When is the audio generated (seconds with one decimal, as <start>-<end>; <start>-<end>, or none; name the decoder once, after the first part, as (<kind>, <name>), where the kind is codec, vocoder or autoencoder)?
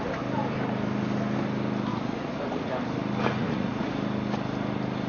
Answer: 1.9-2.7 (vocoder, Vocos); 3.4-3.9